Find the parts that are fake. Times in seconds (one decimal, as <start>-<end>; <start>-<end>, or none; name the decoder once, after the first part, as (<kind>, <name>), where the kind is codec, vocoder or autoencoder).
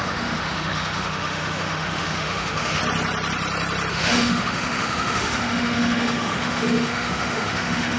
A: 0.0-2.8 (autoencoder, DAC-VAE); 3.9-8.0